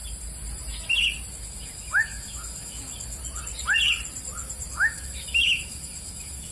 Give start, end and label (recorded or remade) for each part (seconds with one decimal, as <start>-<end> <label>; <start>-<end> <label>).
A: 0.0-1.3 recorded; 1.3-3.2 remade; 3.2-4.7 recorded; 4.7-6.5 remade